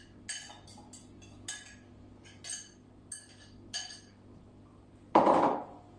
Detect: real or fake real